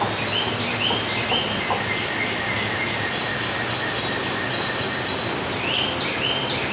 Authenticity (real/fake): real